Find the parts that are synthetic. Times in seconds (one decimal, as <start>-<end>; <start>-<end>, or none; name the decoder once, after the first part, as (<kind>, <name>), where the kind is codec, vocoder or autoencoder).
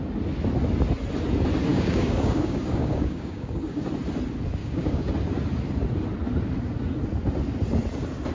1.7-3.9 (codec, DAC); 4.6-5.1